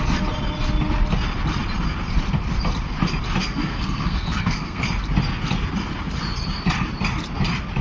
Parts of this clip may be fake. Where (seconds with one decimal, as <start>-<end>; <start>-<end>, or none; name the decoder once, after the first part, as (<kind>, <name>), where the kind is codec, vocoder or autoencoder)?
3.4-4.8 (codec, SNAC)